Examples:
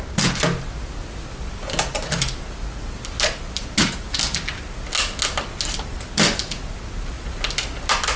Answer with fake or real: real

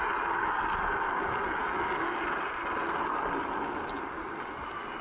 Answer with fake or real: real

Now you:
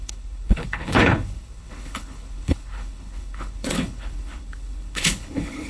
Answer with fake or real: fake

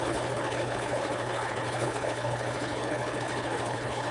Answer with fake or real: fake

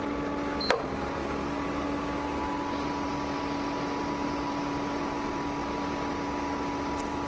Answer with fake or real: real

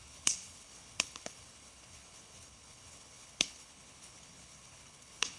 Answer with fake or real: fake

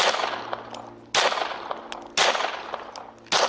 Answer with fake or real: real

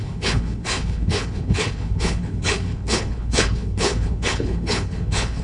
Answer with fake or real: fake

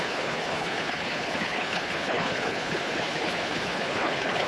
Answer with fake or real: fake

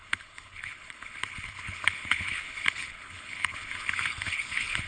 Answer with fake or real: fake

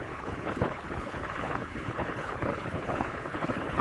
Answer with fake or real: fake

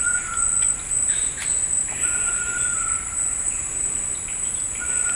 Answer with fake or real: real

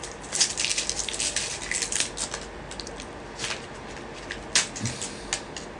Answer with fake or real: real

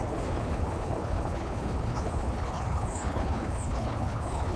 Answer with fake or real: fake